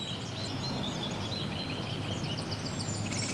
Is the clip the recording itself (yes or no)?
yes